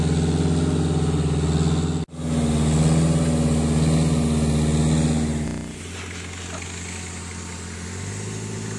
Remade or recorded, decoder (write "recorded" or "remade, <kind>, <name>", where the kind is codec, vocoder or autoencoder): recorded